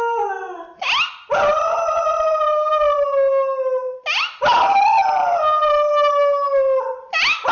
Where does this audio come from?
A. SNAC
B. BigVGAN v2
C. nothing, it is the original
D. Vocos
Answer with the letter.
C